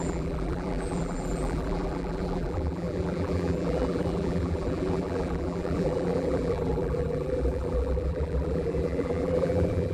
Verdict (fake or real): fake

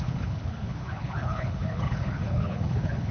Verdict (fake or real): fake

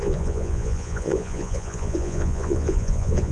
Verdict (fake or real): fake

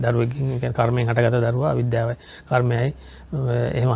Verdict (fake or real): real